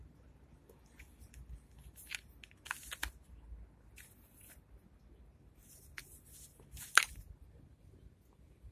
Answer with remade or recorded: recorded